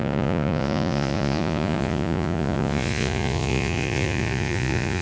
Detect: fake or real fake